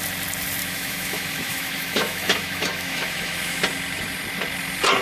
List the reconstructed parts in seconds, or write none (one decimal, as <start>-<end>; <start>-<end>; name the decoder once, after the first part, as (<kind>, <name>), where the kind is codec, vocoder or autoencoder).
0.6-3.6 (autoencoder, DAC-VAE)